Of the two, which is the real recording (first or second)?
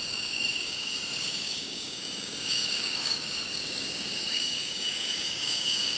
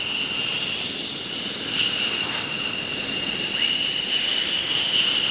second